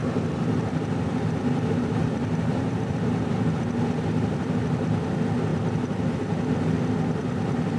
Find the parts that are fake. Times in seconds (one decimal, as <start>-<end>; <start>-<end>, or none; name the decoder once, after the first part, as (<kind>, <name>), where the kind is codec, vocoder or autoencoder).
0.0-0.7 (vocoder, BigVGAN v2); 2.0-3.2